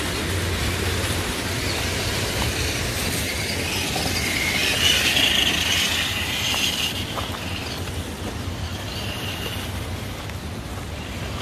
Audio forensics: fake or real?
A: real